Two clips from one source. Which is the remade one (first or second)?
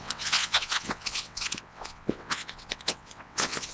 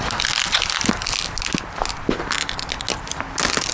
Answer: first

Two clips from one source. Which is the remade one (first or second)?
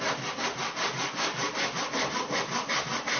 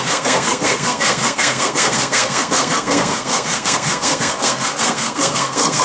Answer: second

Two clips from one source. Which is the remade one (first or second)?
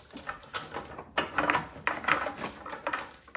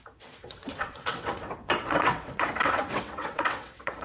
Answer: second